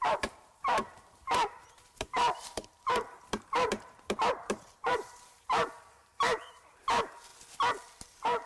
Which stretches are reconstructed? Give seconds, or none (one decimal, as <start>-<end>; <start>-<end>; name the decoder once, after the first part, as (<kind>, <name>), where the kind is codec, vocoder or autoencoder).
0.0-7.3 (vocoder, BigVGAN v2); 7.8-8.5